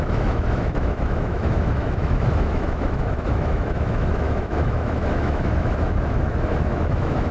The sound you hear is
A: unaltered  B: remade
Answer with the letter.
B